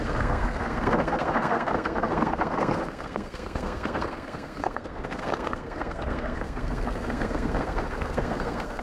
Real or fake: fake